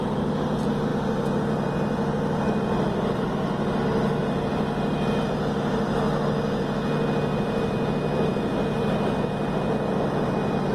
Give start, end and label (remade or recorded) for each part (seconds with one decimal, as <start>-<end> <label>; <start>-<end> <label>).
0.0-10.7 recorded